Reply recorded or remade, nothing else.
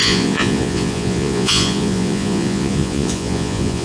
remade